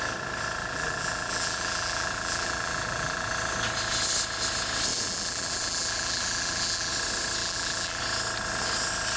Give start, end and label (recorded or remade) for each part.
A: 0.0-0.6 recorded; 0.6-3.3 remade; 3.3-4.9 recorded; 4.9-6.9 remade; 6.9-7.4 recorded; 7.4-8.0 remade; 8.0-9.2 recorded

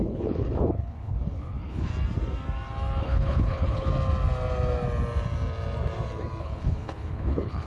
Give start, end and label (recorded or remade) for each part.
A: 0.0-1.9 remade; 1.9-3.0 recorded; 3.0-3.9 remade; 3.9-6.4 recorded; 6.4-7.7 remade

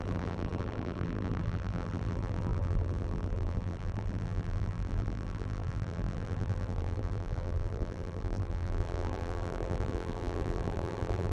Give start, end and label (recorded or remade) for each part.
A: 0.0-11.3 remade